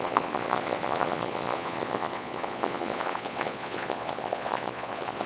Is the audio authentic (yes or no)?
no